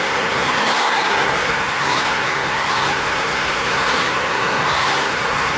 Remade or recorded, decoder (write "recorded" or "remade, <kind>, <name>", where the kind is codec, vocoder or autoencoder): remade, codec, SNAC